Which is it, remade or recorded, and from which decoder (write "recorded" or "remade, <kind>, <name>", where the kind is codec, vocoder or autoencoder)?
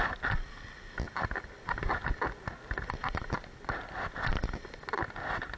recorded